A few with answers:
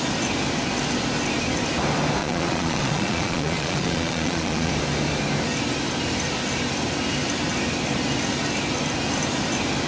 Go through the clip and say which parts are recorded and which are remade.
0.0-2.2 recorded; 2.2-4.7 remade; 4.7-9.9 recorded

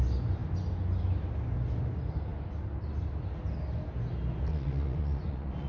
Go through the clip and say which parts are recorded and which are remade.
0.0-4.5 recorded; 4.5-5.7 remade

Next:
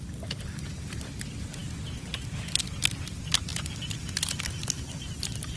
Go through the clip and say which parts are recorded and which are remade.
0.0-5.6 recorded